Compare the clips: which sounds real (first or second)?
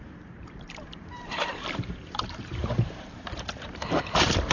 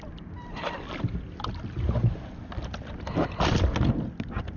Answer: second